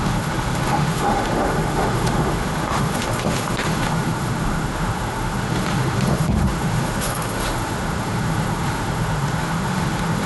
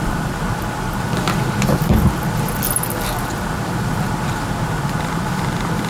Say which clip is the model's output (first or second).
first